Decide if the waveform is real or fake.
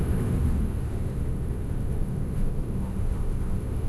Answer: fake